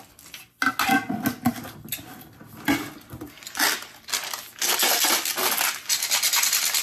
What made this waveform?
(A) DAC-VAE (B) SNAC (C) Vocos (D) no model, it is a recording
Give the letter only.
D